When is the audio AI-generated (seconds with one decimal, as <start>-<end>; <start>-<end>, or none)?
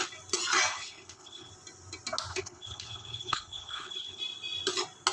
0.7-1.5; 2.3-4.2